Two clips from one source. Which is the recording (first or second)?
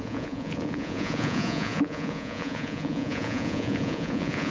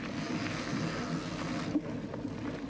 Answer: second